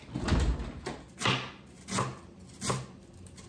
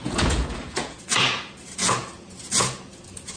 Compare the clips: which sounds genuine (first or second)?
first